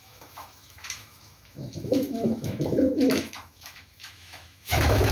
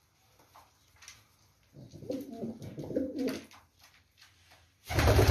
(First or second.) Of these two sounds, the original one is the second